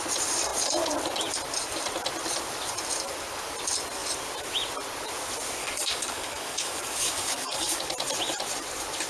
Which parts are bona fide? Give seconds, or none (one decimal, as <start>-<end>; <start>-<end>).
0.0-5.6; 7.8-9.1